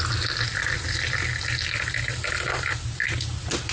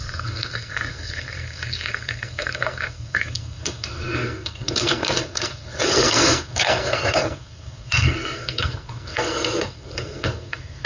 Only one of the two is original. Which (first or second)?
first